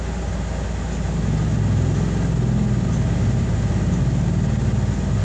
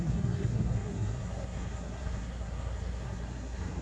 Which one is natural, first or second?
first